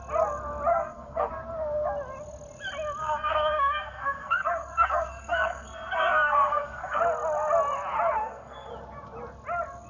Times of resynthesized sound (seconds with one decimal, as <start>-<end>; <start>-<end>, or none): 0.7-1.3; 3.0-7.0; 8.2-8.7